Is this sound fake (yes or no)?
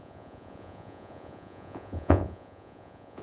yes